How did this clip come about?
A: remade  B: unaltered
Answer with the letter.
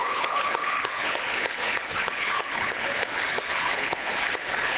A